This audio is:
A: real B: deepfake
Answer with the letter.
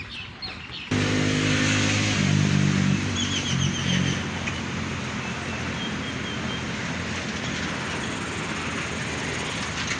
A